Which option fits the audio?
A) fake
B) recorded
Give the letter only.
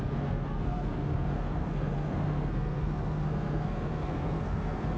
A